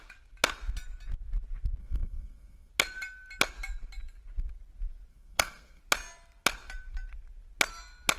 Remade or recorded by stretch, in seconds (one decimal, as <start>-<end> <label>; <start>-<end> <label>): 0.0-1.8 recorded; 1.8-2.7 remade; 2.7-5.1 recorded; 5.1-5.8 remade; 5.8-8.2 recorded